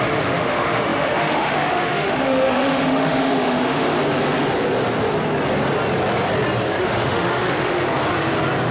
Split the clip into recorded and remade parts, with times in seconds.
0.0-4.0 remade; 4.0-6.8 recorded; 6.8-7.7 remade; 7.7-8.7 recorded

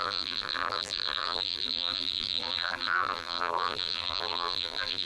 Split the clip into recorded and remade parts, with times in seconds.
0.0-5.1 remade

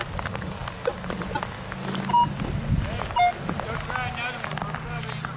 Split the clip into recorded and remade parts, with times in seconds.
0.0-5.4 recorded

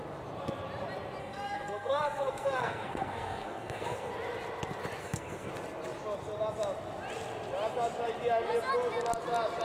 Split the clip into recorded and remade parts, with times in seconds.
0.0-1.2 recorded; 1.2-4.1 remade; 4.1-5.0 recorded; 5.0-5.5 remade; 5.5-9.6 recorded

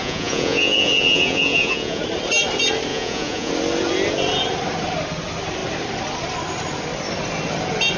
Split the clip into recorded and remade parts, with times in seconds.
0.0-2.0 remade; 2.0-2.9 recorded; 2.9-3.5 remade; 3.5-8.0 recorded